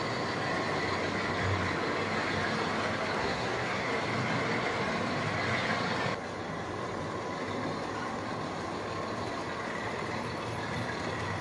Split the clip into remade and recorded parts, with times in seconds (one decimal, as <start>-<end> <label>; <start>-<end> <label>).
0.0-3.2 recorded; 3.2-3.9 remade; 3.9-11.4 recorded